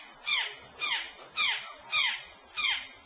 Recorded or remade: recorded